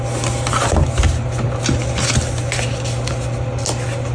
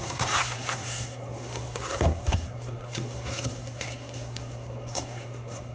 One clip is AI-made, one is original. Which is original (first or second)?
first